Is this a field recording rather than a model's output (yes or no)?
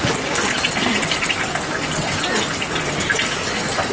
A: yes